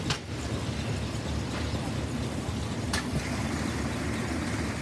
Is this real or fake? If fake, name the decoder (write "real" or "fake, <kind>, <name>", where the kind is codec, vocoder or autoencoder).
real